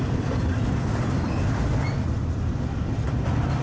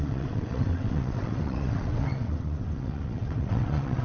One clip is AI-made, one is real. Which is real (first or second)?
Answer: first